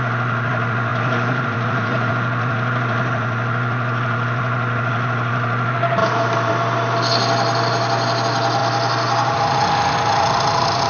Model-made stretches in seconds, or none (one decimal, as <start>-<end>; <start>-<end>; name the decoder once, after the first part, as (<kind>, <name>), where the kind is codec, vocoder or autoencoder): 0.9-2.1 (vocoder, BigVGAN v2); 6.0-6.5

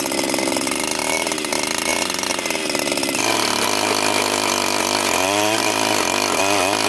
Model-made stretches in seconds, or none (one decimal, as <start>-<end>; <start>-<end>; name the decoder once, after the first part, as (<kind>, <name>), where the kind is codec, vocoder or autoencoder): 1.0-1.5 (vocoder, BigVGAN v2)

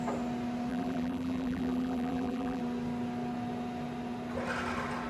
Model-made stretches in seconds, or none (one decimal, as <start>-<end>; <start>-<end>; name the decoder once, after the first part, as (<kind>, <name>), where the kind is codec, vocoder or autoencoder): 0.7-2.6 (vocoder, BigVGAN v2)